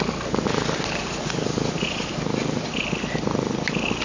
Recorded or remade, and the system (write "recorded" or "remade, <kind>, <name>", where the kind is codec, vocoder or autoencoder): recorded